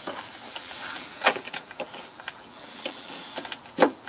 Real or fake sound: fake